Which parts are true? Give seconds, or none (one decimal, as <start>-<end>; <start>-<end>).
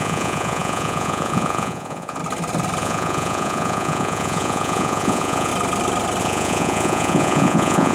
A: 2.2-2.8; 5.5-6.2